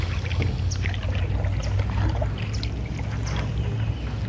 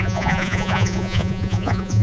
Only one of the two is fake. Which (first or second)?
second